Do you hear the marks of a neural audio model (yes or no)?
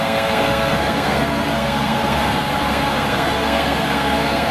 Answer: yes